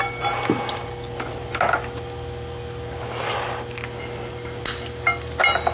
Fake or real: real